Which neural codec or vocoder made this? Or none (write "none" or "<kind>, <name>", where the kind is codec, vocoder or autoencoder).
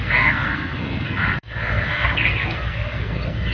codec, SNAC